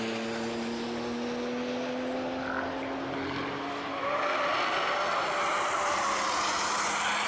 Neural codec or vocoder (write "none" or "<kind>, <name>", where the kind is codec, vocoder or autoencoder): none